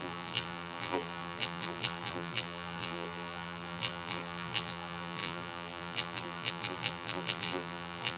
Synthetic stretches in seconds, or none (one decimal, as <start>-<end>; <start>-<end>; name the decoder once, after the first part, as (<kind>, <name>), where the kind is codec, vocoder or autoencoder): 0.0-8.2 (vocoder, BigVGAN v2)